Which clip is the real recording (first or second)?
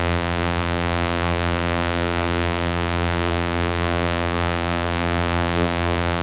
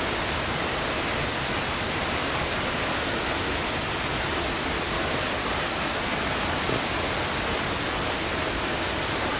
second